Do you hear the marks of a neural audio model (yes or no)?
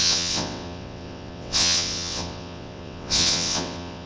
yes